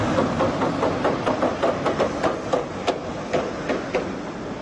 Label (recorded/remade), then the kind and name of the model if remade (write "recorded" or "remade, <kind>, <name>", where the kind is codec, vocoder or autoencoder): recorded